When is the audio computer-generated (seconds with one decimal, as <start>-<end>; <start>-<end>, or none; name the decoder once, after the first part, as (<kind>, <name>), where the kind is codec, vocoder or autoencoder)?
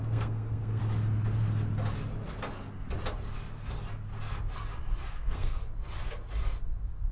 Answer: 0.0-0.8 (codec, SNAC); 5.1-5.6